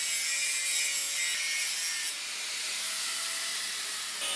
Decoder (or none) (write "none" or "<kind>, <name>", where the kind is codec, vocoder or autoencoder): none